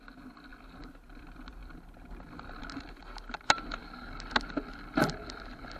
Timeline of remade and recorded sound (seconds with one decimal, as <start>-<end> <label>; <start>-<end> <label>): 0.0-5.8 recorded